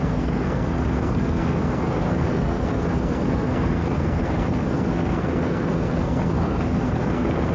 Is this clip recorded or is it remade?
remade